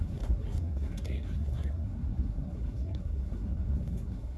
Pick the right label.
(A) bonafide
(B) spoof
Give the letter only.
B